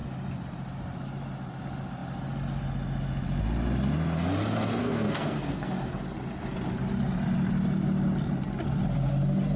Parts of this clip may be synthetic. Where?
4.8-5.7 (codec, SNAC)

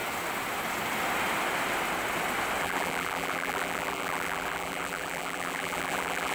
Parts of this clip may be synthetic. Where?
2.6-6.3 (vocoder, BigVGAN v2)